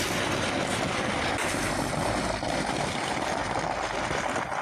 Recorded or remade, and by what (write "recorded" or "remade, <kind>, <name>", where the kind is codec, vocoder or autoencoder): recorded